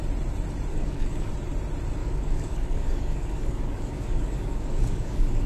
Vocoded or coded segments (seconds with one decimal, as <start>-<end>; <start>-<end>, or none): 0.7-1.3; 2.0-5.5